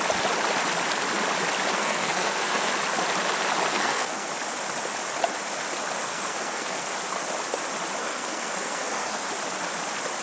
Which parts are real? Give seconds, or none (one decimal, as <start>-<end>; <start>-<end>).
0.0-1.7; 2.7-3.7; 4.3-6.1; 6.9-8.0; 9.3-10.2